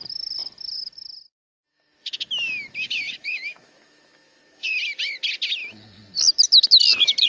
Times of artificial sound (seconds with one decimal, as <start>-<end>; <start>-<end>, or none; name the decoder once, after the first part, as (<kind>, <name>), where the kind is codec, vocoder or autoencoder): 1.7-4.8 (autoencoder, DAC-VAE)